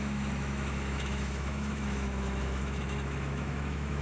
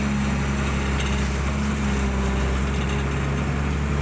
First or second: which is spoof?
first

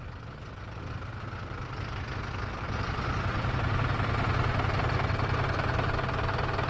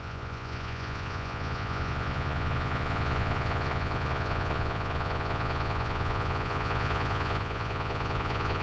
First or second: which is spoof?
second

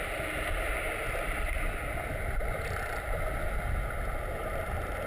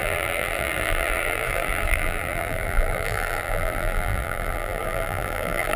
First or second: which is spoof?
second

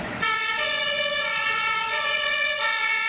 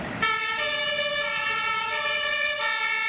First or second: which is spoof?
first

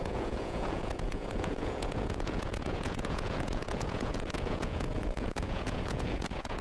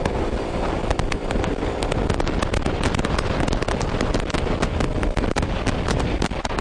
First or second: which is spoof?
first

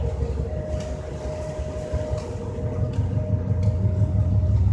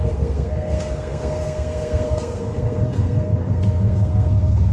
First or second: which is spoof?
second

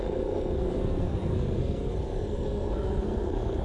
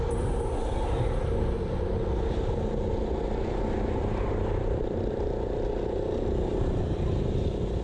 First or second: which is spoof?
first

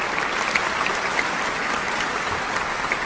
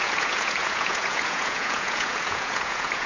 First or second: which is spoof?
second